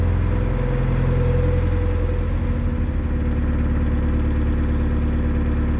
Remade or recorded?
recorded